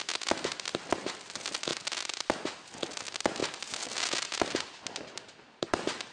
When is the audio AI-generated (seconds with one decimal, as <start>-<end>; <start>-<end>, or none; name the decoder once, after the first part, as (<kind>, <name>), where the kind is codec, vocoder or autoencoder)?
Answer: none